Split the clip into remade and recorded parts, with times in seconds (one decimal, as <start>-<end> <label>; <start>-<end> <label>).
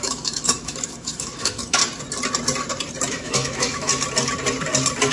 0.0-1.8 remade; 1.8-3.1 recorded; 3.1-3.9 remade; 3.9-5.1 recorded